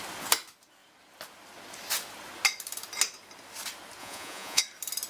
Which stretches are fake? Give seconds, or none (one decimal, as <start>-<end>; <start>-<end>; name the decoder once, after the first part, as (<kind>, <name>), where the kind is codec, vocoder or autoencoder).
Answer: 4.0-4.6 (vocoder, Vocos)